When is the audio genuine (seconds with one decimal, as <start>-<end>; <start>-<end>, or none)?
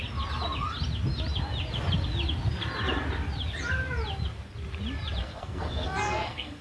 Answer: 0.0-5.2